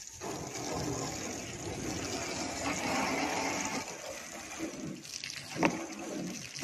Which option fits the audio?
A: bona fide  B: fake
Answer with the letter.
A